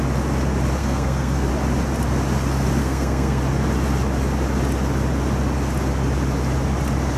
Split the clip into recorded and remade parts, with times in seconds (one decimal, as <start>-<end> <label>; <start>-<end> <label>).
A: 0.0-0.8 recorded; 0.8-1.5 remade; 1.5-2.8 recorded; 2.8-3.4 remade; 3.4-7.2 recorded